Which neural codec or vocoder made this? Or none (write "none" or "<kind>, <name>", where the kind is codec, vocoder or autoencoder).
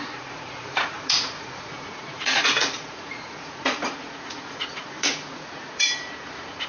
vocoder, Vocos